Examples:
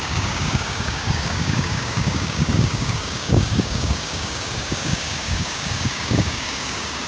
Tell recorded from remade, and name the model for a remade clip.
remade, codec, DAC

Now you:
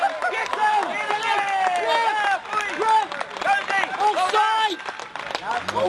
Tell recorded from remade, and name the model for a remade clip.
recorded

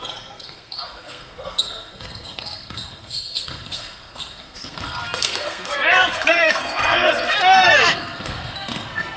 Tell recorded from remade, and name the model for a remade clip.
remade, codec, SNAC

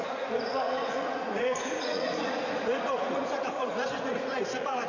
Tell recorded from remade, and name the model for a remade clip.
remade, vocoder, Vocos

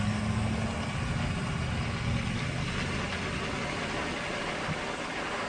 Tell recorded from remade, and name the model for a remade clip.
recorded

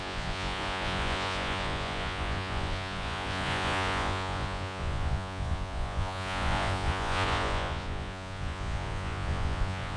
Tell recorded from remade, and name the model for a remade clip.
remade, vocoder, Vocos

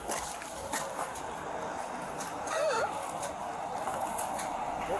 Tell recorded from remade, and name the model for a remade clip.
recorded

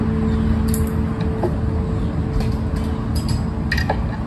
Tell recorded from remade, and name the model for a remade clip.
recorded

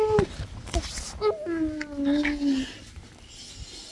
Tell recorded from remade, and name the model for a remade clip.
recorded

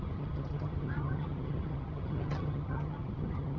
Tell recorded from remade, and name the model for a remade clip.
remade, vocoder, HiFi-GAN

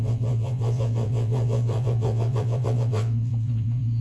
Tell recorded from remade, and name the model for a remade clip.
remade, vocoder, WaveNeXt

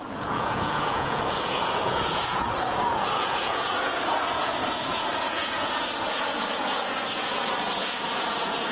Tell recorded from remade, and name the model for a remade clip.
remade, vocoder, Vocos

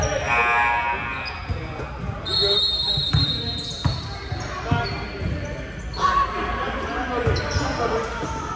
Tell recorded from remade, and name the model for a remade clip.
recorded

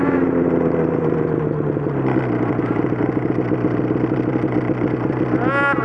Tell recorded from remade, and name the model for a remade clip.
recorded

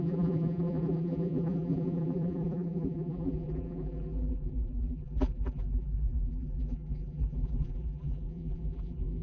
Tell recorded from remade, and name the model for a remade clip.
remade, vocoder, BigVGAN v2